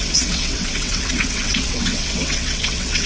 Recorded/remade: remade